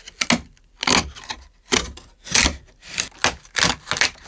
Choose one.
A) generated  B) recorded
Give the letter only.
B